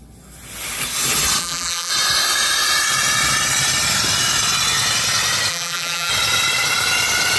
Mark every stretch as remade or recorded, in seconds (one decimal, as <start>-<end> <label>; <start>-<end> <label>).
0.0-1.4 recorded; 1.4-1.9 remade; 1.9-5.5 recorded; 5.5-6.1 remade; 6.1-7.4 recorded